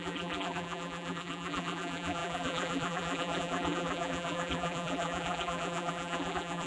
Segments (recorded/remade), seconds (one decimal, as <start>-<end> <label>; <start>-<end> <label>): 0.0-6.7 remade